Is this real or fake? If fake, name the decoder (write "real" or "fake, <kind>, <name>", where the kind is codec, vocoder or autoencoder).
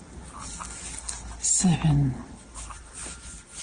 real